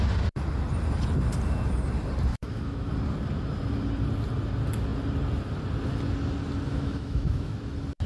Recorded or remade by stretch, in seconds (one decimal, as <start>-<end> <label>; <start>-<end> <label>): 0.0-2.3 recorded; 2.3-2.9 remade; 2.9-6.7 recorded; 6.7-7.6 remade; 7.6-8.1 recorded